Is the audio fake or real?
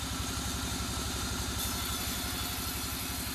real